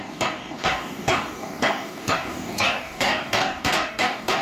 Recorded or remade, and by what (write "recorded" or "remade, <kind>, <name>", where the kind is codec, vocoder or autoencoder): remade, codec, DAC